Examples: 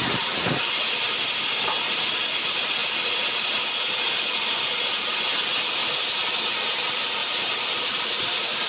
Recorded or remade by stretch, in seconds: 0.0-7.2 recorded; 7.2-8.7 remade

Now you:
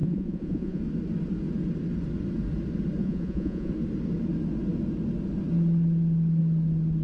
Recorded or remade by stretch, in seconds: 0.0-0.8 remade; 0.8-3.0 recorded; 3.0-3.7 remade; 3.7-7.0 recorded

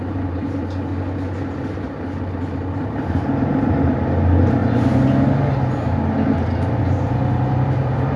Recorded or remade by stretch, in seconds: 0.0-0.9 remade; 0.9-2.2 recorded; 2.2-4.6 remade; 4.6-6.8 recorded; 6.8-8.2 remade

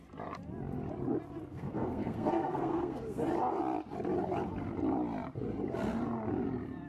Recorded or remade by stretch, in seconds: 0.0-1.5 recorded; 1.5-3.2 remade; 3.2-6.9 recorded